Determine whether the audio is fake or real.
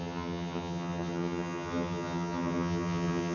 fake